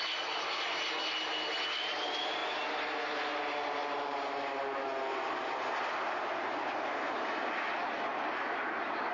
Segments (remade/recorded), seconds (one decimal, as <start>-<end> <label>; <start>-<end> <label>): 0.0-9.1 recorded